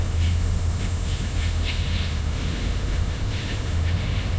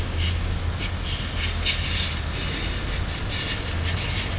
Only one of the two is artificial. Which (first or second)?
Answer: first